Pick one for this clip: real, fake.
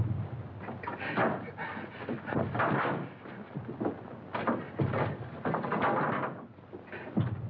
real